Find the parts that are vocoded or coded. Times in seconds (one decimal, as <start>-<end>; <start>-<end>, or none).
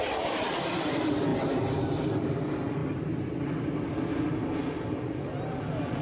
none